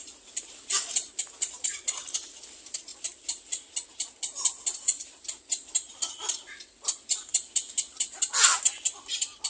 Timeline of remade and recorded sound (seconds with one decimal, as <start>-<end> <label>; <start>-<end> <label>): 0.0-9.5 recorded